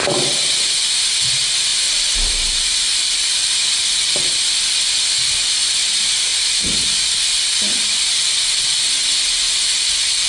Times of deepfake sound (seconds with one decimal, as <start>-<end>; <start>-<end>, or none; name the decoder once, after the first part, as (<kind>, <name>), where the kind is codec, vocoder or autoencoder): 1.7-4.9 (vocoder, BigVGAN v2)